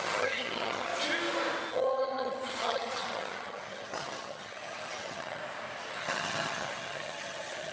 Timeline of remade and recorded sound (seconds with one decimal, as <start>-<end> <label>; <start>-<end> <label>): 0.0-0.9 remade; 0.9-1.7 recorded; 1.7-5.4 remade; 5.4-5.9 recorded; 5.9-7.7 remade